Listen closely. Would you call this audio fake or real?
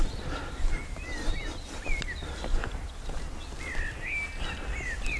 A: real